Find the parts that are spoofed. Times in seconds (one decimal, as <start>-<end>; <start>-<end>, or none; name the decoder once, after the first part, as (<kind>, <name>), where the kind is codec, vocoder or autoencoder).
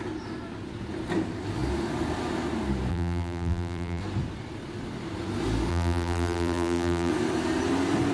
2.9-4.0 (vocoder, BigVGAN v2); 5.7-7.1